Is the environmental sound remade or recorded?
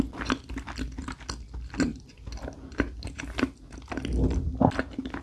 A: recorded